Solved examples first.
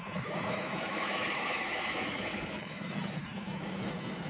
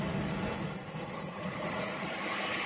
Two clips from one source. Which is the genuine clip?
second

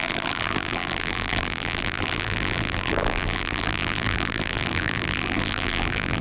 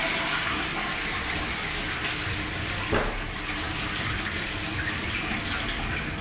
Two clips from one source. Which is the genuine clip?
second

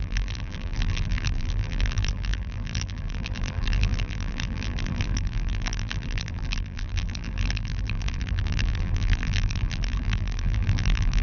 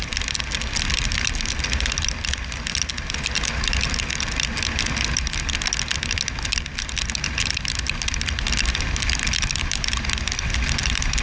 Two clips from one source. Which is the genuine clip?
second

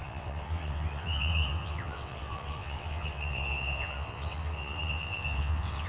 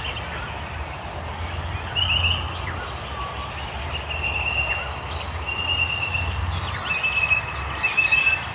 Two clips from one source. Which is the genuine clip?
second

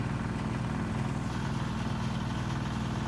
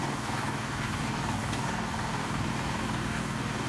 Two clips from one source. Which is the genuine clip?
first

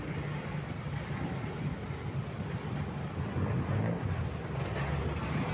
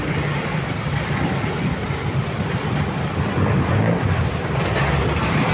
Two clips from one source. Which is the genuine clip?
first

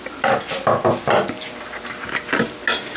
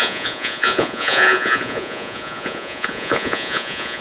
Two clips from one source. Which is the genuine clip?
first